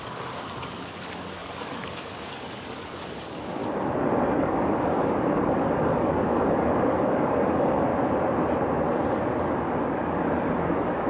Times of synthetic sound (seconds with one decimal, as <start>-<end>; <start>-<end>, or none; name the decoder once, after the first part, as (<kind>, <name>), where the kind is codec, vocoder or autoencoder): 0.0-3.6 (codec, DAC); 4.4-7.9; 9.8-11.1